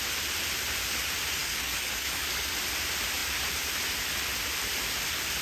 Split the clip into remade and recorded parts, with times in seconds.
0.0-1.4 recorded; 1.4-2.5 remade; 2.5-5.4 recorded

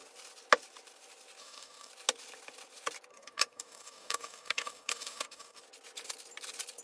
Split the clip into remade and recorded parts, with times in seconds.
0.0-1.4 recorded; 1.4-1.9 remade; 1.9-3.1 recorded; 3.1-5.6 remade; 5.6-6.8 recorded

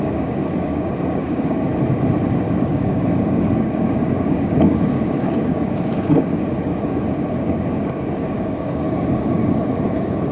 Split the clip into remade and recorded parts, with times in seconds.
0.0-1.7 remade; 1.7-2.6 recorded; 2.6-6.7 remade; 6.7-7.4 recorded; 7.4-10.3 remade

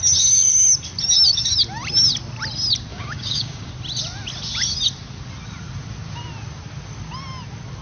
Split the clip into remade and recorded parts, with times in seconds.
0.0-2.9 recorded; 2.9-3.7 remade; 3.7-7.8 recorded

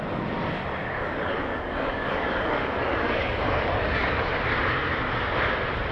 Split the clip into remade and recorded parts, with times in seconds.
0.0-0.8 recorded; 0.8-4.3 remade; 4.3-5.9 recorded

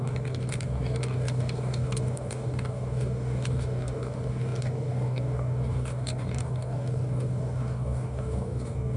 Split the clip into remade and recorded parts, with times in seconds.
0.0-9.0 remade

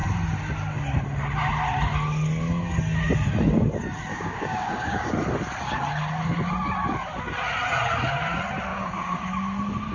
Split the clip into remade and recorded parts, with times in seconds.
0.0-4.1 recorded; 4.1-5.1 remade; 5.1-8.7 recorded; 8.7-9.3 remade; 9.3-9.9 recorded